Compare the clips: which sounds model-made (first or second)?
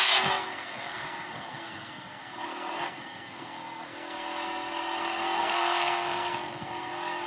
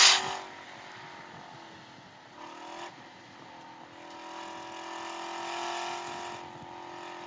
first